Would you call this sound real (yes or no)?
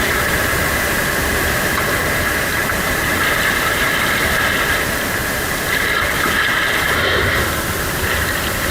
yes